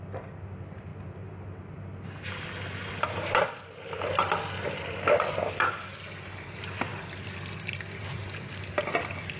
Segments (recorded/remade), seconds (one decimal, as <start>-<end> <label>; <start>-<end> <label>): 0.0-9.4 recorded